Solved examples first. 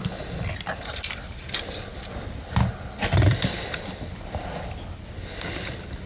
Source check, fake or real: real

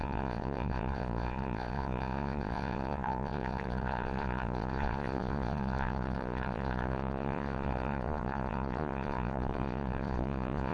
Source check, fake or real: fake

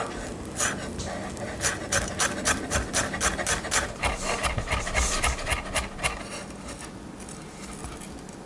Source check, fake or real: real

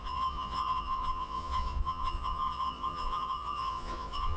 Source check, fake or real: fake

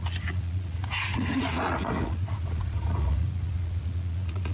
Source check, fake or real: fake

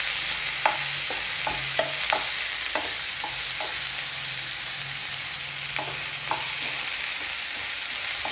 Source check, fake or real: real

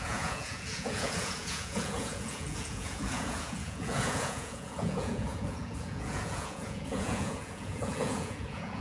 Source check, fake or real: fake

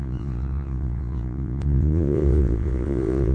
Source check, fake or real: fake